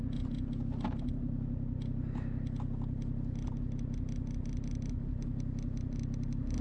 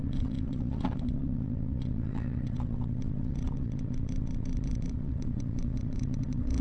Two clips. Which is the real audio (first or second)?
first